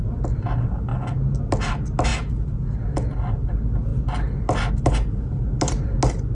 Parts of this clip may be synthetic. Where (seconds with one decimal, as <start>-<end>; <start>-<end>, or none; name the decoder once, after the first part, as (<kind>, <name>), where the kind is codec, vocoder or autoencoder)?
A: none